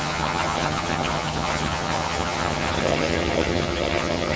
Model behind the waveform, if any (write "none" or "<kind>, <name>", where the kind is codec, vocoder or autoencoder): vocoder, HiFi-GAN